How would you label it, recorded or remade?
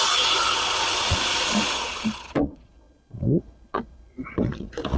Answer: remade